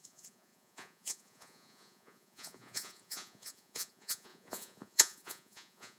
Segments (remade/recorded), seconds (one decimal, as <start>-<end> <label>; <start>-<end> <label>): 0.0-6.0 remade